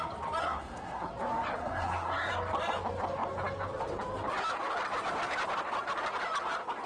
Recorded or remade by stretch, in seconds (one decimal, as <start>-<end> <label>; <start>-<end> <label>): 0.0-0.4 recorded; 0.4-1.1 remade; 1.1-1.6 recorded; 1.6-2.3 remade; 2.3-6.9 recorded